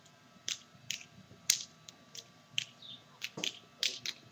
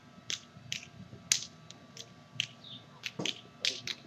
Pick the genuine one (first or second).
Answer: second